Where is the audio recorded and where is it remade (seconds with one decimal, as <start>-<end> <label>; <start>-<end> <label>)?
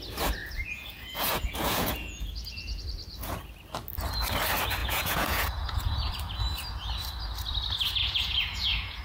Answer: 0.0-0.4 recorded; 0.4-2.8 remade; 2.8-4.8 recorded; 4.8-6.1 remade; 6.1-8.0 recorded; 8.0-9.0 remade